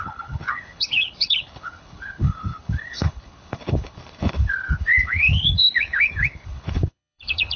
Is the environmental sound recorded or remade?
remade